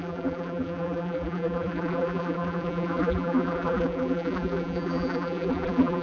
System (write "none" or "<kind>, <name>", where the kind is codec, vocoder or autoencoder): vocoder, BigVGAN v2